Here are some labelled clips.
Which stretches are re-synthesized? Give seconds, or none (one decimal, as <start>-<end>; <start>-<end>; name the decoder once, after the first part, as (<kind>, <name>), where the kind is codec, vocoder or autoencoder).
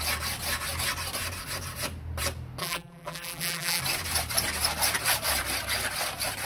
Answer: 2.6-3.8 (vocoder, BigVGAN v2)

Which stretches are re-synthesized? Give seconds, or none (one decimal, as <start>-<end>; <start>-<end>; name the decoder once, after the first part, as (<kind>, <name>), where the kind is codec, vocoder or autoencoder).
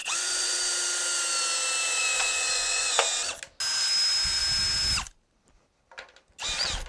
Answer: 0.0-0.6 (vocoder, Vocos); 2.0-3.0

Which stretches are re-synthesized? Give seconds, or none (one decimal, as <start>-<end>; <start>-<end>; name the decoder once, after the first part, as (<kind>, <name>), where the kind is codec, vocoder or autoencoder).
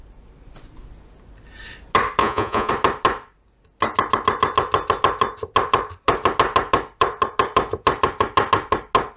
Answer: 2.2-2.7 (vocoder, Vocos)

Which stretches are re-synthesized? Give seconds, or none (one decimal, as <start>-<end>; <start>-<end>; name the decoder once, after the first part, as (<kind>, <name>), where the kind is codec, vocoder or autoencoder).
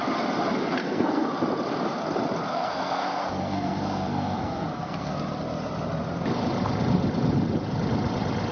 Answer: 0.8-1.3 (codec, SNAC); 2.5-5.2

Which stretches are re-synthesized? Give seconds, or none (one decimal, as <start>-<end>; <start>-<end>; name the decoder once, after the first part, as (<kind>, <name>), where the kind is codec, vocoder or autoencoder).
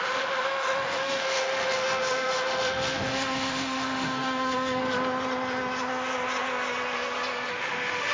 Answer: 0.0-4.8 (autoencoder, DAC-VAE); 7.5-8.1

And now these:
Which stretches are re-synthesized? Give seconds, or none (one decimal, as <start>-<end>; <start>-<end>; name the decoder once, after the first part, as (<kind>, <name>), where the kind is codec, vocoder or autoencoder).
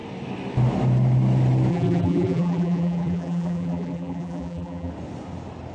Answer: 1.7-4.9 (vocoder, BigVGAN v2)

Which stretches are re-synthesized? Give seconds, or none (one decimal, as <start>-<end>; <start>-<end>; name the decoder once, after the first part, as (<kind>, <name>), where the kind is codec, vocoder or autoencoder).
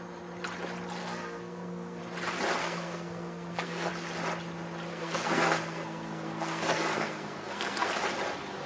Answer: 1.0-2.0 (codec, SNAC); 2.6-3.9; 4.9-7.9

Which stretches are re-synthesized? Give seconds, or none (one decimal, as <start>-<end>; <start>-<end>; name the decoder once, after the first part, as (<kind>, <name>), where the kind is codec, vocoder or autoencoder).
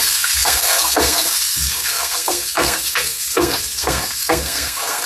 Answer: 0.0-5.1 (codec, SNAC)